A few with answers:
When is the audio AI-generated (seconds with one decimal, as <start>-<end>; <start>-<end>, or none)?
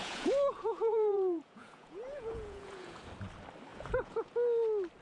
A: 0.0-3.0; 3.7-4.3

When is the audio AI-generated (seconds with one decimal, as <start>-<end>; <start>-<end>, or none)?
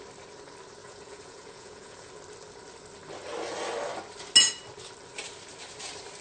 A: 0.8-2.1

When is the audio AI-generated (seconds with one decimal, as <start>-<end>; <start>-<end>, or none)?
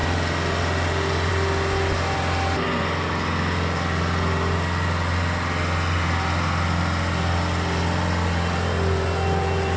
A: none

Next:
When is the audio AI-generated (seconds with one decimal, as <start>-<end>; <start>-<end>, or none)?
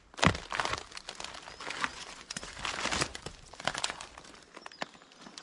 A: 1.9-2.6; 3.1-4.1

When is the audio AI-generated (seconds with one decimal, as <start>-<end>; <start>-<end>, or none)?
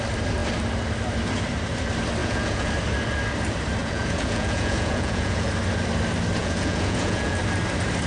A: 2.2-2.7; 3.8-5.5; 6.4-7.4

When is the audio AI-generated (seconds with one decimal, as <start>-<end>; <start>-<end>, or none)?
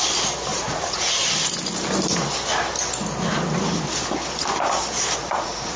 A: 0.5-1.1; 5.2-5.8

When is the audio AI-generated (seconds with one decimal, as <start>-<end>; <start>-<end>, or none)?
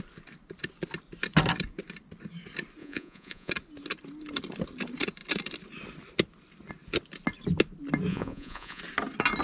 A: 2.8-3.5; 8.1-8.8